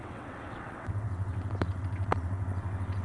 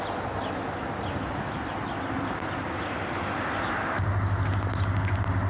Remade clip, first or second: first